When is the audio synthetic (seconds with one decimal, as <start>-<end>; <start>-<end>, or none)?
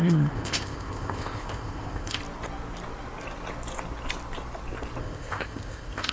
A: 0.0-2.2; 5.0-6.1